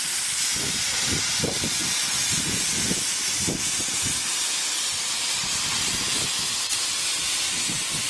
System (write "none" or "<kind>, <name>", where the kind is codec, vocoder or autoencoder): none